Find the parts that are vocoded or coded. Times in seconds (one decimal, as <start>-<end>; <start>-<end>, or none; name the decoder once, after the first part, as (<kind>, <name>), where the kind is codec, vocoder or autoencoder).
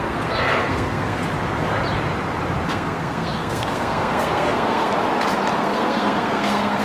0.0-1.2 (codec, SNAC); 2.7-4.9; 5.6-6.8